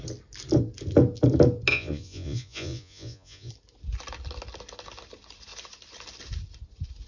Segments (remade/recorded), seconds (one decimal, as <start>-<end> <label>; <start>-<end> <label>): 0.0-1.7 recorded; 1.7-3.5 remade; 3.5-7.1 recorded